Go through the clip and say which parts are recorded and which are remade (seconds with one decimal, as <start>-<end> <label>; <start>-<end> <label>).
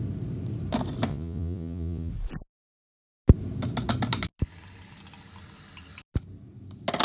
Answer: 0.0-1.1 recorded; 1.1-2.1 remade; 2.1-7.0 recorded